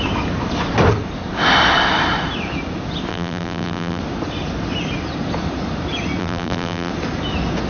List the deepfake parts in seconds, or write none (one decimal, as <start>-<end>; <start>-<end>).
3.1-4.0; 6.2-6.9